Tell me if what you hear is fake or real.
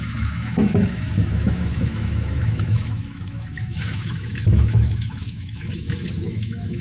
fake